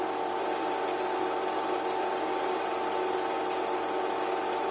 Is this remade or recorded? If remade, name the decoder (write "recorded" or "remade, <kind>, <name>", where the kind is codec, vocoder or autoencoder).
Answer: recorded